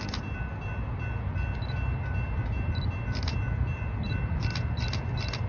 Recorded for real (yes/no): yes